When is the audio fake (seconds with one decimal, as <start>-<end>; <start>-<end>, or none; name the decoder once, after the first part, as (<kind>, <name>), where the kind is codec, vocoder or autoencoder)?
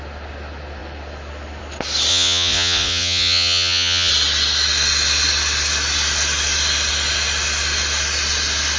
2.1-4.1 (vocoder, Vocos)